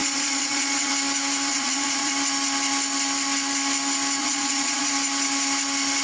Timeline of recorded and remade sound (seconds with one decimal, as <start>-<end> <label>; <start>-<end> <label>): 0.0-0.9 remade; 0.9-1.5 recorded; 1.5-2.1 remade; 2.1-4.2 recorded; 4.2-4.9 remade; 4.9-6.0 recorded

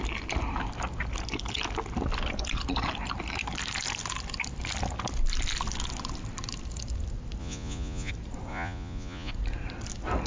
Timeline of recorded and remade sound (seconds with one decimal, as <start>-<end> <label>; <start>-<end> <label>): 0.0-7.4 recorded; 7.4-8.1 remade; 8.1-8.5 recorded; 8.5-9.3 remade; 9.3-10.3 recorded